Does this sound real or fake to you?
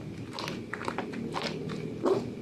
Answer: real